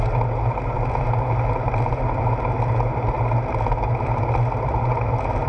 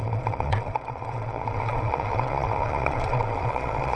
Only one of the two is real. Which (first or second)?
first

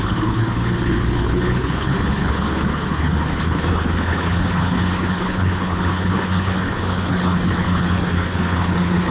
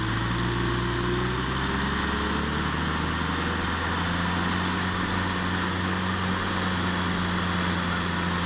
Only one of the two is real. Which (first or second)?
second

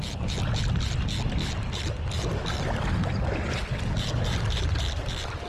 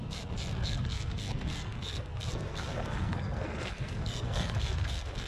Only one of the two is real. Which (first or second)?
first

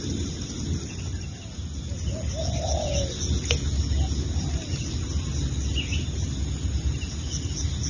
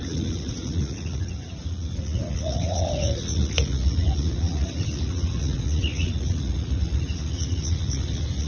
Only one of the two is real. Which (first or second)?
first